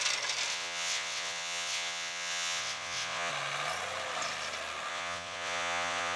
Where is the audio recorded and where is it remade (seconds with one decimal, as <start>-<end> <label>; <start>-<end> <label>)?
0.0-0.5 recorded; 0.5-3.3 remade; 3.3-4.9 recorded; 4.9-6.2 remade